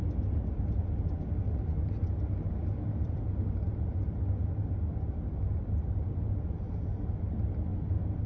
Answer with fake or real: real